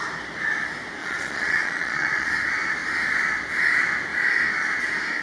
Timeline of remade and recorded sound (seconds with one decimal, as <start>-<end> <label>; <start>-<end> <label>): 0.0-1.0 recorded; 1.0-2.3 remade; 2.3-5.2 recorded